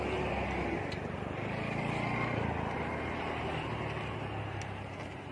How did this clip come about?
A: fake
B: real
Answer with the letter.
B